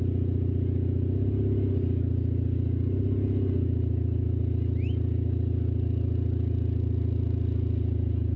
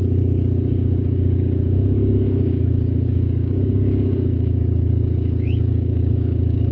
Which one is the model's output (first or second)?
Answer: second